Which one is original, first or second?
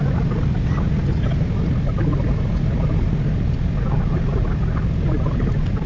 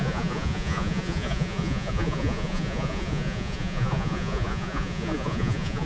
first